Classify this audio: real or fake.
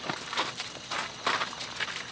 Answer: real